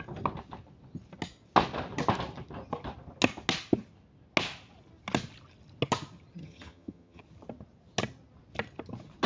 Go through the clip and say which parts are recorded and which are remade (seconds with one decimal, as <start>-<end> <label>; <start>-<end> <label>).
0.0-6.4 recorded; 6.4-7.2 remade; 7.2-9.3 recorded